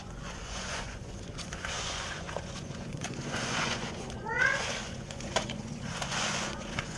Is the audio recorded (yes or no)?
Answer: no